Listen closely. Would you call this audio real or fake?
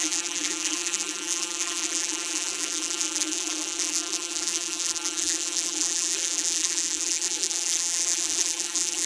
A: fake